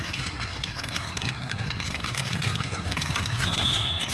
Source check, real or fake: fake